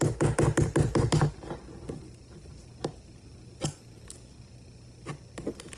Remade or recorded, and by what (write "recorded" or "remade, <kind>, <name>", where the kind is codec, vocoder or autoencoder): recorded